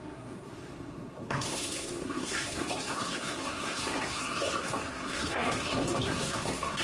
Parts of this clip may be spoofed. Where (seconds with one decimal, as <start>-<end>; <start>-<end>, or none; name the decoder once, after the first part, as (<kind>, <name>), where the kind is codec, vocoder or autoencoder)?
0.0-6.8 (codec, SNAC)